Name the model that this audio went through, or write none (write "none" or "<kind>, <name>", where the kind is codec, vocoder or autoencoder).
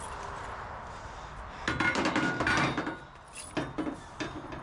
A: none